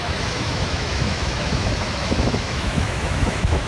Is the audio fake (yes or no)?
yes